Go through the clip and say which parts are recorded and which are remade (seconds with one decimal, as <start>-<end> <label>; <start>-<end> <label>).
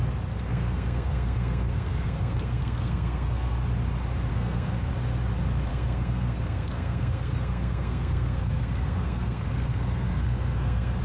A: 0.0-0.5 recorded; 0.5-3.6 remade; 3.6-4.3 recorded; 4.3-4.9 remade; 4.9-5.7 recorded; 5.7-11.0 remade